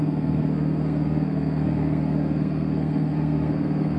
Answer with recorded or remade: remade